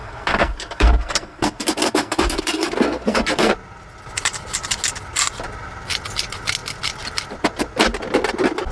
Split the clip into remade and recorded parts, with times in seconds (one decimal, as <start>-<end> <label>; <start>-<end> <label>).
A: 0.0-3.5 remade; 3.5-8.7 recorded